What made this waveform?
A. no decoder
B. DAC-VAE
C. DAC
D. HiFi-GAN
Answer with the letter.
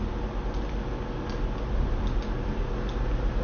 A